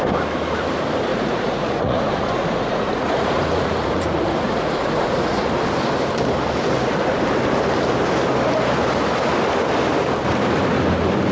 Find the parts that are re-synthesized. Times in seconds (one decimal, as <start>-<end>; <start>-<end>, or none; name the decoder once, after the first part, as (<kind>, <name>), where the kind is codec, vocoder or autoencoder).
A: 1.1-5.5 (vocoder, Vocos)

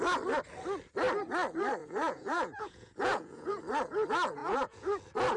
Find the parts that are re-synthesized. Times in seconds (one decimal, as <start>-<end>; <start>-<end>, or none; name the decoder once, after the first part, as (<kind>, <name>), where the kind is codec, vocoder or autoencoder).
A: 1.8-3.6 (vocoder, Vocos); 4.4-5.0